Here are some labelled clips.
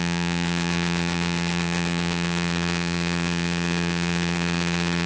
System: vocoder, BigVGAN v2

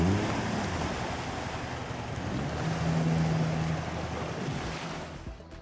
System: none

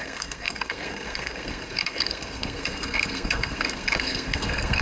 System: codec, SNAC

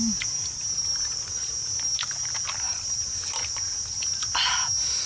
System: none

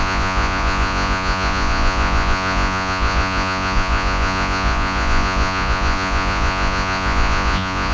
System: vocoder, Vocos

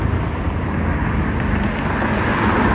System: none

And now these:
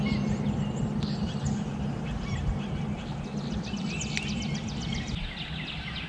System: none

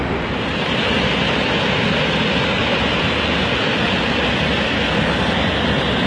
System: none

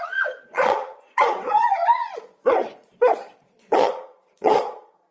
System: vocoder, Vocos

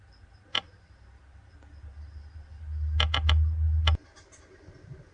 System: none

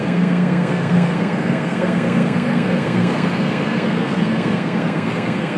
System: codec, SNAC